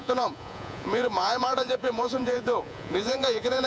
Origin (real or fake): fake